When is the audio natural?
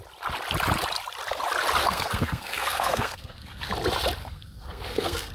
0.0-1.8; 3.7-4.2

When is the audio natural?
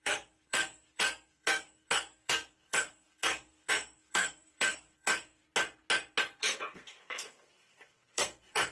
5.4-6.4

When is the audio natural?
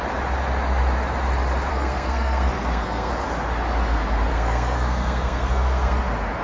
0.0-1.7; 3.1-4.3; 6.0-6.4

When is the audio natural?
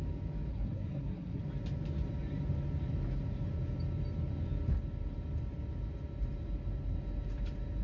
0.0-0.5; 1.4-7.8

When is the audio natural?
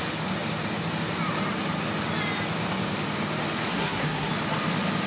0.0-3.7; 4.3-5.1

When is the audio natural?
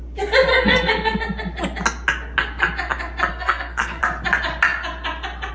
0.0-0.5; 1.2-3.3; 4.0-5.5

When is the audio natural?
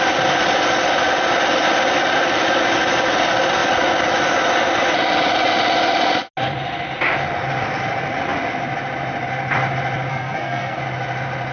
0.0-10.1; 10.8-11.5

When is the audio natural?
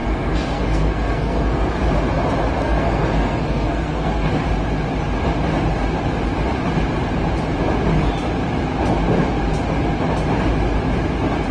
1.7-2.6; 4.3-11.5